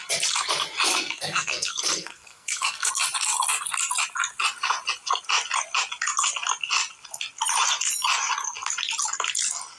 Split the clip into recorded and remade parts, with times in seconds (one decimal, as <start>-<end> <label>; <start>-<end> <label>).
0.0-0.9 recorded; 0.9-2.9 remade; 2.9-9.8 recorded